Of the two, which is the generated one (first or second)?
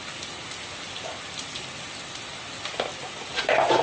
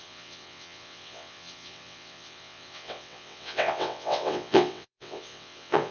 second